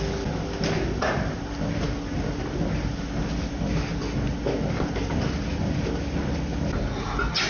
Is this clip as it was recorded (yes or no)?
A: yes